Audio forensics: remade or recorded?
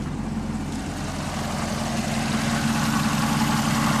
recorded